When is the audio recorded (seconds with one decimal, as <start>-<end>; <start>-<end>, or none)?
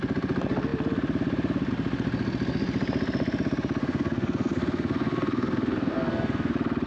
0.0-3.8; 6.5-6.9